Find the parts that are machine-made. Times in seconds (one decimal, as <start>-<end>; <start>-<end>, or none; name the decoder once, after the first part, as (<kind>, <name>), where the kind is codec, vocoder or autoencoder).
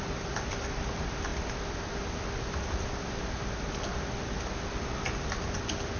none